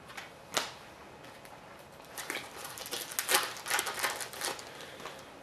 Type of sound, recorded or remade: recorded